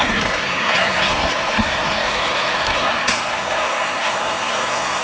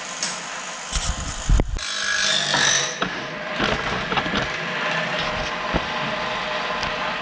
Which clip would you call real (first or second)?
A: second